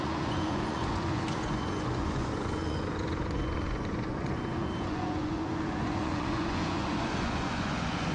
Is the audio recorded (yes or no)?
no